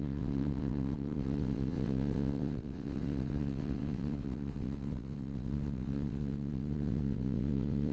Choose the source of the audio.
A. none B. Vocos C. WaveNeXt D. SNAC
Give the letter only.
C